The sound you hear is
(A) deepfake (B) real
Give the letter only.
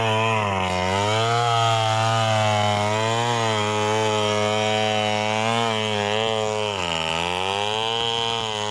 B